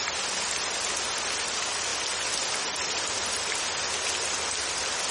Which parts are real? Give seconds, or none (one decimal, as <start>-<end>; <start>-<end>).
0.0-5.1